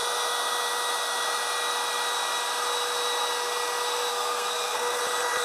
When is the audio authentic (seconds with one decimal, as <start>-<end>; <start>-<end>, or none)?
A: 0.0-4.1; 5.0-5.4